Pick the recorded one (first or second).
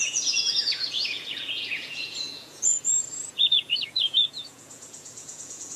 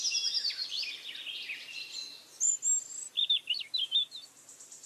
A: second